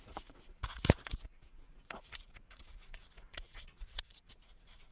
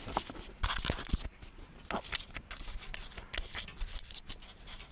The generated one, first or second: first